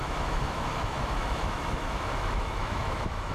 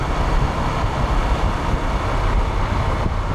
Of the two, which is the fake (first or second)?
first